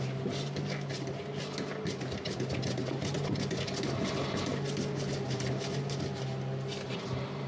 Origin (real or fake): real